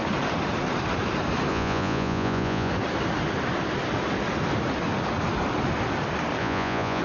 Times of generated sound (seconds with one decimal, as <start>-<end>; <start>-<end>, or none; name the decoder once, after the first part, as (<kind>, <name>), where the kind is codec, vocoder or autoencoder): 1.5-2.7 (vocoder, Vocos); 6.4-7.0